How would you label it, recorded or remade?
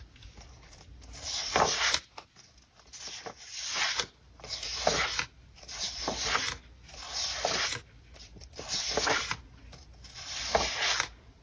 recorded